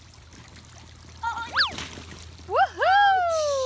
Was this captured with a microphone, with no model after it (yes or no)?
yes